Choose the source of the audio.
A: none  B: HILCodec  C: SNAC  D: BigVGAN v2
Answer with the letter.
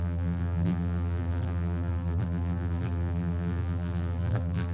D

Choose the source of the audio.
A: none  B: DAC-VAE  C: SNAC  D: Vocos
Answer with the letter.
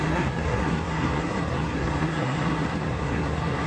C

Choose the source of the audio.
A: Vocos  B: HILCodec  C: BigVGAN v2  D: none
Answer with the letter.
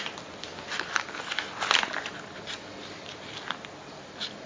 D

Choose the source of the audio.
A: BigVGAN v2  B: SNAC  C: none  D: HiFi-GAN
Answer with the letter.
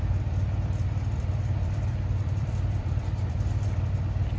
A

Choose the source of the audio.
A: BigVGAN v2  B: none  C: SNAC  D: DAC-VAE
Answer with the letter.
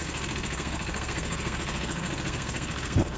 C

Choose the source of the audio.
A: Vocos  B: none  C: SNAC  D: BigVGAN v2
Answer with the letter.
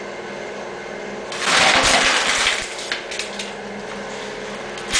B